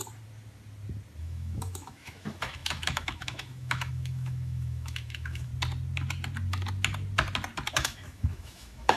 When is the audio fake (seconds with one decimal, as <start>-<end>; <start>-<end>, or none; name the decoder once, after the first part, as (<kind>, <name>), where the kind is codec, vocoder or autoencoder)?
1.2-5.5 (autoencoder, DAC-VAE); 7.7-9.0